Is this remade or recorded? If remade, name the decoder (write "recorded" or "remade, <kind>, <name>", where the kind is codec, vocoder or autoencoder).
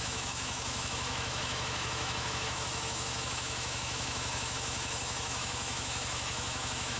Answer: remade, autoencoder, DAC-VAE